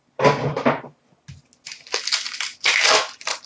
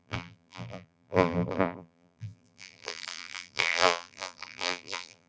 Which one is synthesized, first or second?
second